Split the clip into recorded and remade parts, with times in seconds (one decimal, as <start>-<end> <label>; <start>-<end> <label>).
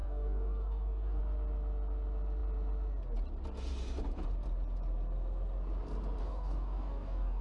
0.0-1.2 remade; 1.2-6.2 recorded; 6.2-7.4 remade